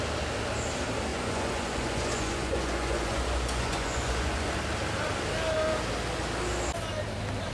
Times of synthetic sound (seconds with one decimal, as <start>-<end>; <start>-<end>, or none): 1.1-4.5